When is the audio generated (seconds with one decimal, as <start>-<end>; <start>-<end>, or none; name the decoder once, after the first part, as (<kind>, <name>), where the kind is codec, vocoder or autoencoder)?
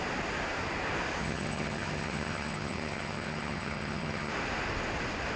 1.2-4.3 (vocoder, HiFi-GAN)